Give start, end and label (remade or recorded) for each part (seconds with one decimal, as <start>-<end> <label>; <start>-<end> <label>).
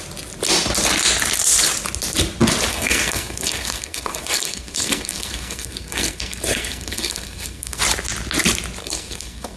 0.0-2.7 recorded; 2.7-7.8 remade; 7.8-8.8 recorded; 8.8-9.6 remade